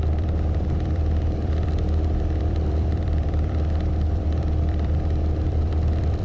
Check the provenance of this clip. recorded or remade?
remade